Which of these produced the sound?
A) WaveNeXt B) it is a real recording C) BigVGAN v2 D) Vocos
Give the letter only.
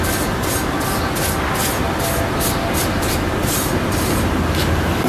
B